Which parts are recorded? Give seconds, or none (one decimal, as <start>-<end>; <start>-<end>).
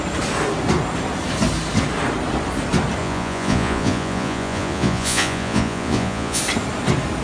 0.0-3.0; 6.4-7.2